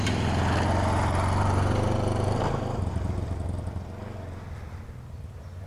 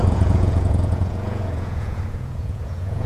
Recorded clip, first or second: first